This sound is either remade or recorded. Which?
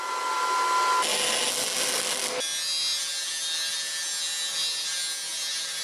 recorded